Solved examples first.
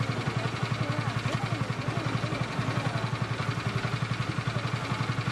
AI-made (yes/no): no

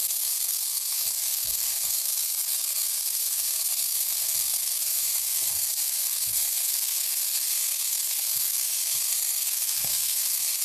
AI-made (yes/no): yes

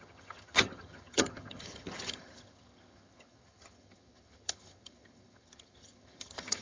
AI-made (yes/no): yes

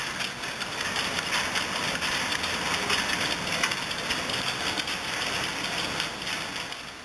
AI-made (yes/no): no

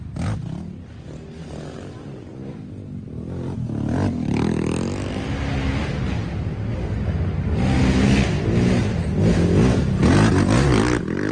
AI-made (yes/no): no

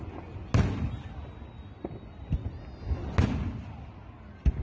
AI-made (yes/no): no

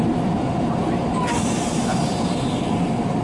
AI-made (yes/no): no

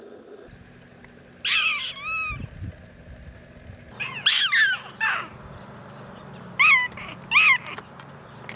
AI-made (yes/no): no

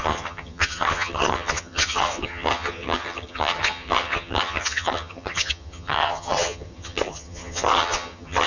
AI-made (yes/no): yes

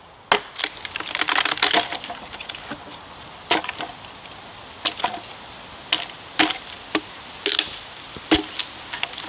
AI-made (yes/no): no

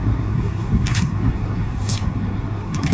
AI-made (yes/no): yes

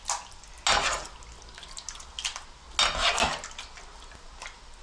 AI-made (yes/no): no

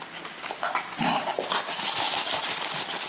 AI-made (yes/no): no